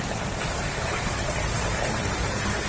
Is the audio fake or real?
fake